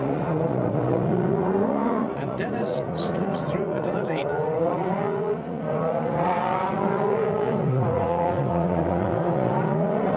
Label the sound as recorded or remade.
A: remade